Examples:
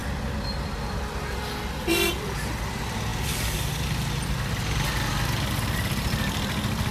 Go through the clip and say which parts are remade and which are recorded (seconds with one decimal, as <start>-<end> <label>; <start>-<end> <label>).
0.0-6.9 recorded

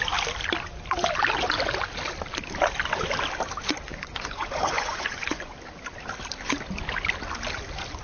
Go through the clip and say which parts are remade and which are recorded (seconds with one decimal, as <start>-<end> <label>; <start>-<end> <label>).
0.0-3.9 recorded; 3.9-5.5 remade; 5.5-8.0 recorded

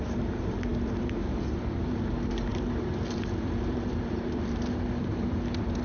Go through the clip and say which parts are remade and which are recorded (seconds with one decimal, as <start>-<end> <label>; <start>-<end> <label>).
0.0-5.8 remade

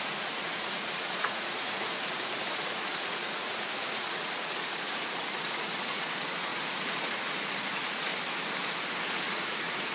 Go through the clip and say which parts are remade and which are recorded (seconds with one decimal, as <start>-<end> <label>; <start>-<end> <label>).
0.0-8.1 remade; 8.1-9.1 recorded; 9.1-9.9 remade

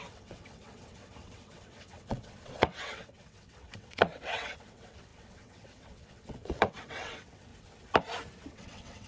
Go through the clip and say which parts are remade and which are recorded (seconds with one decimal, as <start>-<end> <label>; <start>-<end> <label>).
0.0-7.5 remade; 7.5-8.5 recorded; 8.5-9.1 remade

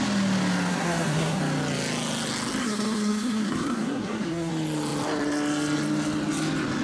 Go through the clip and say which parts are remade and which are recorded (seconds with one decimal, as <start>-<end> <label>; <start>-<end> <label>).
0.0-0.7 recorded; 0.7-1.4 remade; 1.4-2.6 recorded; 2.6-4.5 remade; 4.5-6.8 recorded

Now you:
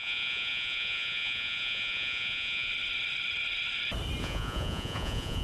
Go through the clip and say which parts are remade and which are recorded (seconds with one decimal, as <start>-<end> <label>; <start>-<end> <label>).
0.0-2.7 remade; 2.7-4.2 recorded; 4.2-5.4 remade